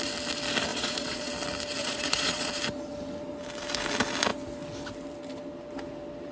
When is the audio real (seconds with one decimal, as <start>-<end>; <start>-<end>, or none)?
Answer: 0.0-0.7; 1.3-1.8; 2.5-6.3

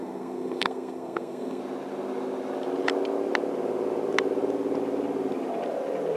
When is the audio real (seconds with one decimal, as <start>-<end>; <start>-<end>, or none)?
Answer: 1.6-6.2

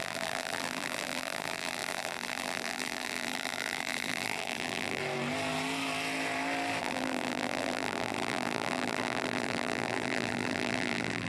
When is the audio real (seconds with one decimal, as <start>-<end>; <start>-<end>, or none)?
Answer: 5.0-6.8

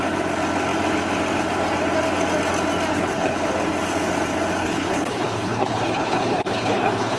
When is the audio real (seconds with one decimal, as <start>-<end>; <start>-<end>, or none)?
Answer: 0.0-2.9; 3.5-4.6

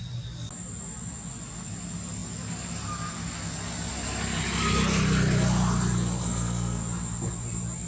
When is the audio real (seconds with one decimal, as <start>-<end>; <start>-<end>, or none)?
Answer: 0.0-6.2; 6.8-7.9

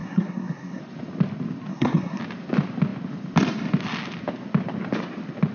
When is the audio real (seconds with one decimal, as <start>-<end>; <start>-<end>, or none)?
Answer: 0.8-1.7; 2.2-5.5

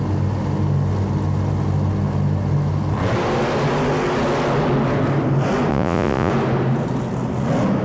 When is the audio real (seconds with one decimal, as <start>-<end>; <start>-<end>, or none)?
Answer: 0.0-5.7; 6.3-7.8

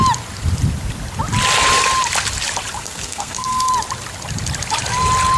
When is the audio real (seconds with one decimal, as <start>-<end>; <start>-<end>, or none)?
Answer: 0.0-2.8; 3.7-5.4